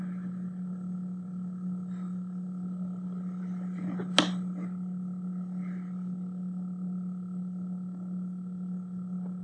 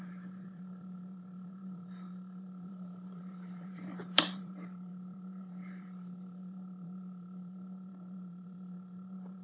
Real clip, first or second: first